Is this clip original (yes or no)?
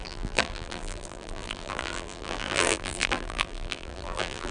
no